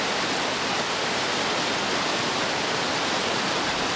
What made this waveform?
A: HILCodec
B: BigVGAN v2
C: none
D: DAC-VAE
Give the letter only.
C